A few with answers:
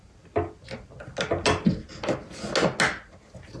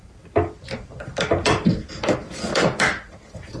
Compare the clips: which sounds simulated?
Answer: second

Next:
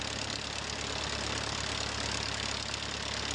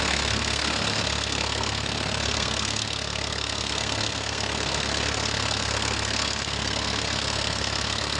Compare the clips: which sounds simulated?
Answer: second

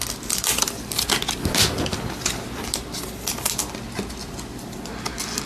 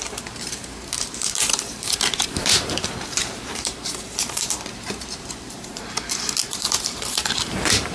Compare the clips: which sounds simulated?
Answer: second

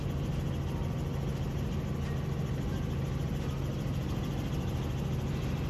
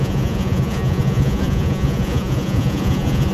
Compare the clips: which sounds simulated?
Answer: second